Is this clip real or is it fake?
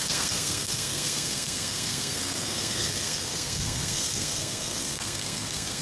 fake